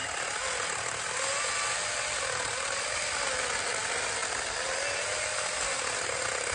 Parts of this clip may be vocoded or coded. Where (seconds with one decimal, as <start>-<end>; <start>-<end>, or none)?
none